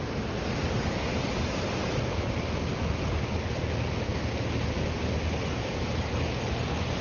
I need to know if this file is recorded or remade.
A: recorded